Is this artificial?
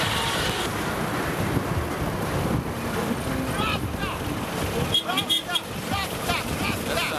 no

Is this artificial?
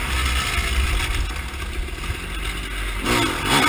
no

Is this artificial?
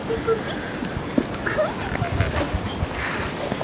no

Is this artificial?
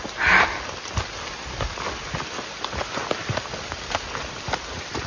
no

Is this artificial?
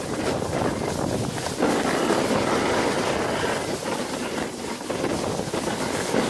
no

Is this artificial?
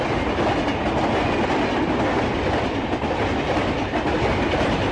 no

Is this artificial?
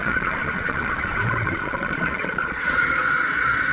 yes